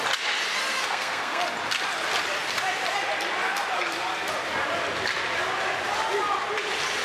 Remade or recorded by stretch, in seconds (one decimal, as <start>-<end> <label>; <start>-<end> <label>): 0.0-0.7 recorded; 0.7-1.4 remade; 1.4-7.0 recorded